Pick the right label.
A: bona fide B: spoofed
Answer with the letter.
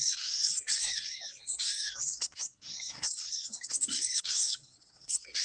B